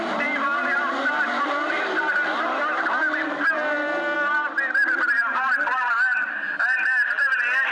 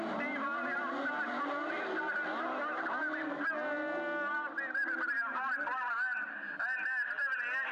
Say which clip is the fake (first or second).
first